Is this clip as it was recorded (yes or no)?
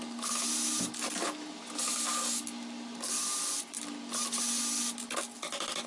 yes